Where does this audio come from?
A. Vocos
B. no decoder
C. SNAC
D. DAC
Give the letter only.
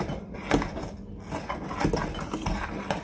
B